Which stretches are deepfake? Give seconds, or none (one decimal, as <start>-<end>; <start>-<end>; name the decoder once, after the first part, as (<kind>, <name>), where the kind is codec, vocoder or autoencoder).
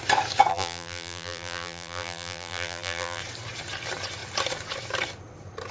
0.5-3.2 (vocoder, BigVGAN v2)